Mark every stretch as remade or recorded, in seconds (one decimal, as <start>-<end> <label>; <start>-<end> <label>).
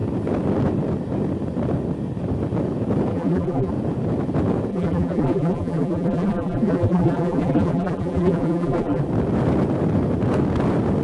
0.0-3.1 recorded; 3.1-3.7 remade; 3.7-4.7 recorded; 4.7-9.0 remade; 9.0-11.0 recorded